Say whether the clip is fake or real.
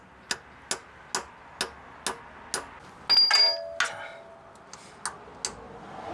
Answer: real